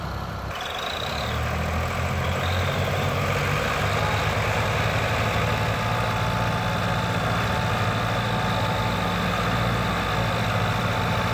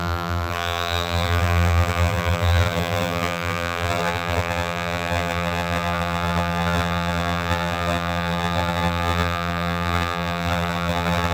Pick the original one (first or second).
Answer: first